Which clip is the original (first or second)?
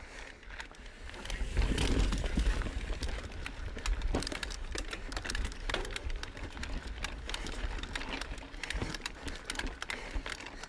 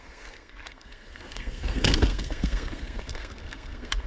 first